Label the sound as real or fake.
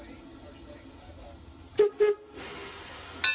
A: real